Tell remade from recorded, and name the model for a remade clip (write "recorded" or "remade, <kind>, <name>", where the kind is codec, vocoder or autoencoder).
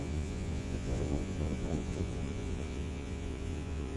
remade, vocoder, Vocos